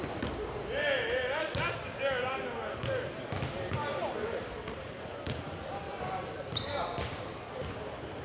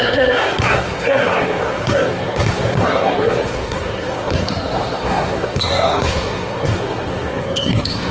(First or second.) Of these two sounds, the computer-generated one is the second